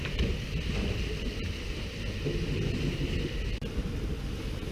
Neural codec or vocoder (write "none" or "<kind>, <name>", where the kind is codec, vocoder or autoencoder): none